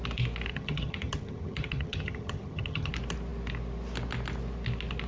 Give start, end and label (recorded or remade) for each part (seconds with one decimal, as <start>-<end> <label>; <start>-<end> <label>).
0.0-0.5 recorded; 0.5-2.9 remade; 2.9-5.1 recorded